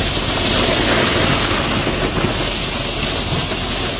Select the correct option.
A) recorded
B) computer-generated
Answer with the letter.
A